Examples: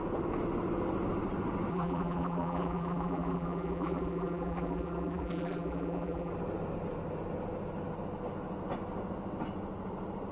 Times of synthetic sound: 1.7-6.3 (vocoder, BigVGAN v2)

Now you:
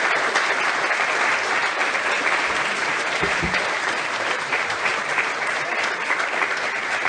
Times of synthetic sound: 1.6-5.7 (vocoder, BigVGAN v2)

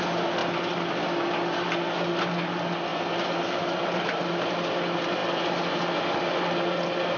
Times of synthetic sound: 2.9-4.5 (vocoder, BigVGAN v2)

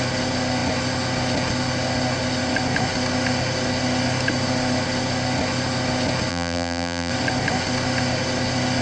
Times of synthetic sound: 6.3-7.1 (vocoder, BigVGAN v2)

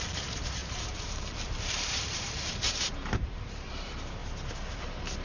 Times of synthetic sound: 0.0-4.2 (vocoder, BigVGAN v2); 4.7-5.2